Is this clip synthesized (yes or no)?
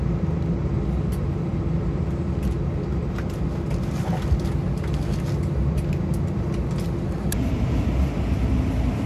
no